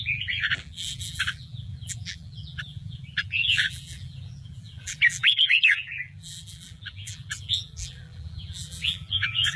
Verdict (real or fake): fake